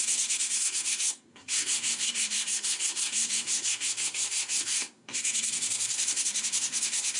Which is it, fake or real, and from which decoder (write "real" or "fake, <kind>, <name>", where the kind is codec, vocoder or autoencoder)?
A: fake, codec, SNAC